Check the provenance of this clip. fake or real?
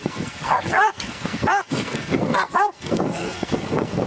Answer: fake